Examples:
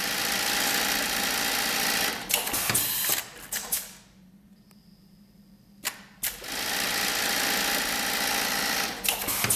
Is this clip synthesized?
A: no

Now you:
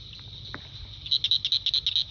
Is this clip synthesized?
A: no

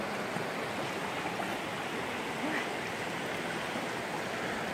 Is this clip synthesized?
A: no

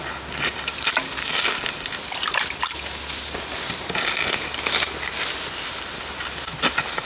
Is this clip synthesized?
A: no